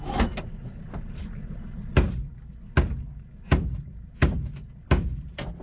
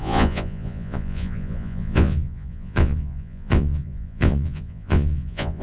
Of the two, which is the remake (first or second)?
second